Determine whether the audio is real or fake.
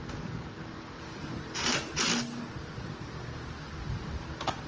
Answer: real